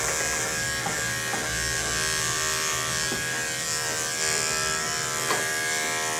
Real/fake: real